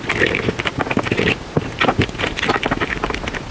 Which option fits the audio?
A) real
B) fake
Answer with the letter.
A